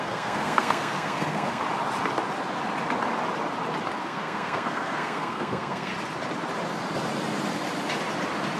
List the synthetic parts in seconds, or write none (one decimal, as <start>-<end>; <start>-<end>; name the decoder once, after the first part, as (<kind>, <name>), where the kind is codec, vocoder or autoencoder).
0.0-1.6 (codec, SNAC); 4.0-5.9